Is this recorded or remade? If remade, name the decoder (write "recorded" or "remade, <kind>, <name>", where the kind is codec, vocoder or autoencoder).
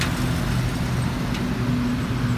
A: recorded